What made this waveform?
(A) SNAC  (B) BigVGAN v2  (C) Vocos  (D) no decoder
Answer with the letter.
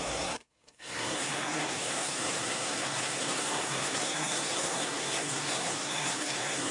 A